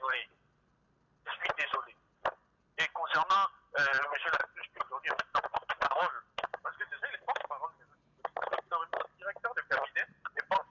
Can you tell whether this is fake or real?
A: real